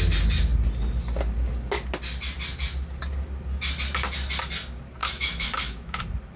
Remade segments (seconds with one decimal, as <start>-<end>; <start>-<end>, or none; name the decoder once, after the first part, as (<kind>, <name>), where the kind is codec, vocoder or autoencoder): 5.0-6.0 (autoencoder, DAC-VAE)